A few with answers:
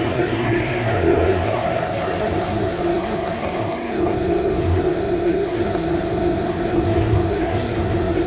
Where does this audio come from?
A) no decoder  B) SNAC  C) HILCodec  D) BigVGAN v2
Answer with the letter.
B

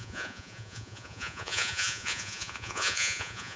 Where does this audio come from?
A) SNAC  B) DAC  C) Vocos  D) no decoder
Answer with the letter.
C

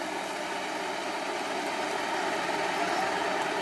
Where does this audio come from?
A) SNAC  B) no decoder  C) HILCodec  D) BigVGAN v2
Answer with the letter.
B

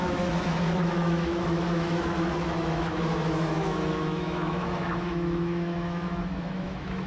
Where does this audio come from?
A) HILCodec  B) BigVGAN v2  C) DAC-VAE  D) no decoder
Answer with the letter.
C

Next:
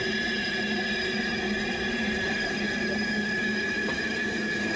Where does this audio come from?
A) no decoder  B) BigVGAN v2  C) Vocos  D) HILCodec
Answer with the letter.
A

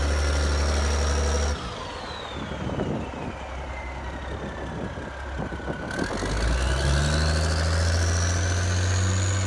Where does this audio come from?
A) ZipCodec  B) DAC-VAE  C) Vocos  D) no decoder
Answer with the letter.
D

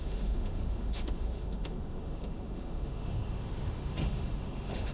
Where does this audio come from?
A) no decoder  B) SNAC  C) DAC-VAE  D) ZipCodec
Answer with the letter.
C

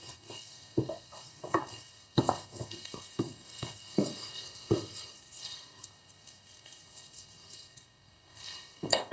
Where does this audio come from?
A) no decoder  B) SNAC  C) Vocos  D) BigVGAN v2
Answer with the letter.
B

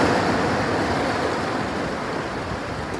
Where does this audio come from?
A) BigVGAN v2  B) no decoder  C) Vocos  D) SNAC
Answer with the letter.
B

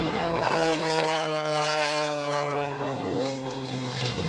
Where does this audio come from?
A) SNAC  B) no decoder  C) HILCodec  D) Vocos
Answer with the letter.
A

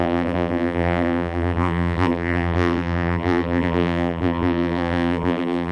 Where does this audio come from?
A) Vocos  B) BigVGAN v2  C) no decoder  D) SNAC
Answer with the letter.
B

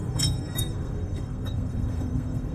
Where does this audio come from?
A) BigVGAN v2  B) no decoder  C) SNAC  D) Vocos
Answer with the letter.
C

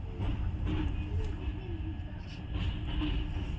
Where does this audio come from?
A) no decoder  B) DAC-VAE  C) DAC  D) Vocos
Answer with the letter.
A